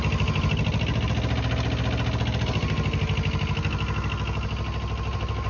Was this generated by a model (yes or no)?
no